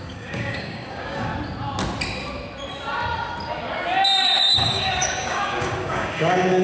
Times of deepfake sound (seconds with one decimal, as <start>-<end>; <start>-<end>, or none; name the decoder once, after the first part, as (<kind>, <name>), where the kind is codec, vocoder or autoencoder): 0.0-1.3 (codec, DAC); 4.5-6.6